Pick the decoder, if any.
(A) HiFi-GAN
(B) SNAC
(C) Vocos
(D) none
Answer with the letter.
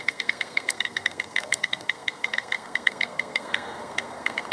B